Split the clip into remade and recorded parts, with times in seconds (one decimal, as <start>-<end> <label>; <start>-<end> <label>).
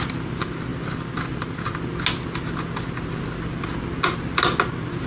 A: 0.0-5.1 recorded